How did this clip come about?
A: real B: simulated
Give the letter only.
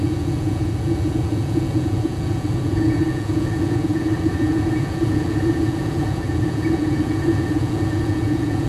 B